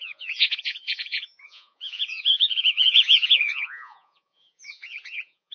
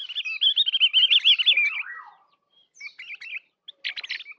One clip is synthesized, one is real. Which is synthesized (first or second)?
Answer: first